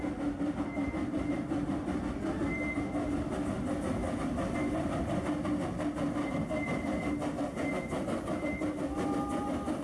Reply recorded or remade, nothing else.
recorded